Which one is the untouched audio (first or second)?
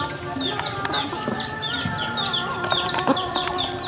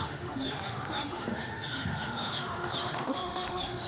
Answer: first